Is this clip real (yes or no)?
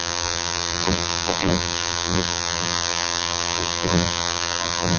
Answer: no